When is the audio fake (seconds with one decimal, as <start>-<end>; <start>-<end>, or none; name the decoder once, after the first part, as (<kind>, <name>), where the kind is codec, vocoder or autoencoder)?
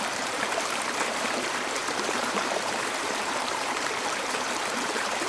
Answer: 0.0-5.3 (vocoder, BigVGAN v2)